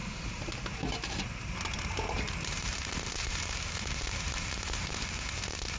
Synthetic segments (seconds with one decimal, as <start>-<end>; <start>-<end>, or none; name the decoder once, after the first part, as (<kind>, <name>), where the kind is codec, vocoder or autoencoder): 0.0-5.8 (vocoder, BigVGAN v2)